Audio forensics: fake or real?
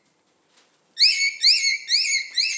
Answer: real